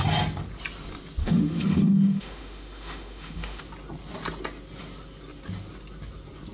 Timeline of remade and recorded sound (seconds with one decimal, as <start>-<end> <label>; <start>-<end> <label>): 0.0-1.2 recorded; 1.2-3.6 remade; 3.6-6.5 recorded